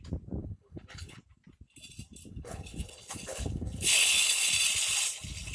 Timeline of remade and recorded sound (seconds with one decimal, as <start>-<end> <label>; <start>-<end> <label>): 0.0-0.4 recorded; 0.4-1.2 remade; 1.2-2.3 recorded; 2.3-4.5 remade; 4.5-5.5 recorded